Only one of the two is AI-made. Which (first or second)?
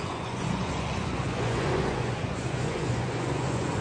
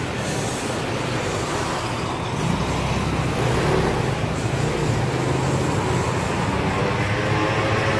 first